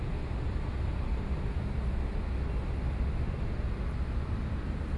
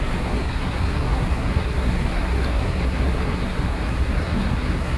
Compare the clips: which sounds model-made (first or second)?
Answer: second